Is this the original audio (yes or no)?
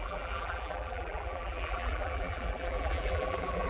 no